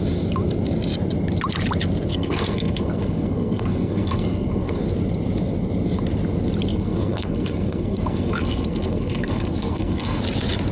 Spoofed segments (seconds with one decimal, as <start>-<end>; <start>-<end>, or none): 2.1-4.8; 6.7-10.2